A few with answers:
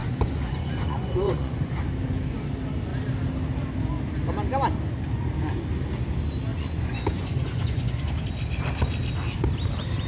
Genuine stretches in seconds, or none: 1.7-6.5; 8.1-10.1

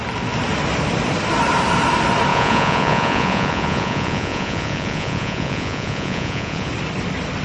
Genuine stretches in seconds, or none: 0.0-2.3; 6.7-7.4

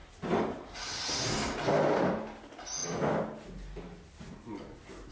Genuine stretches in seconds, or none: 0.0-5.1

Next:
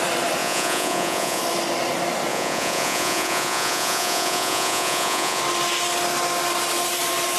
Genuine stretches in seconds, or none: 0.0-0.4; 1.4-2.3; 5.4-7.4